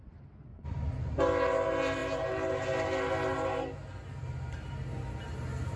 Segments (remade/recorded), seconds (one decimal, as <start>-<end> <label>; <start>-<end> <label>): 0.0-0.5 recorded; 0.5-1.1 remade; 1.1-5.8 recorded